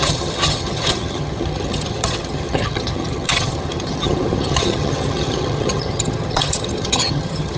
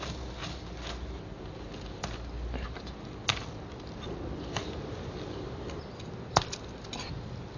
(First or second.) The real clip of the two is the second